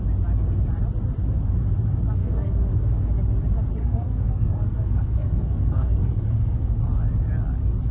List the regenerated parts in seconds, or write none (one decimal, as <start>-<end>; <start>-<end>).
2.2-3.1; 3.8-6.8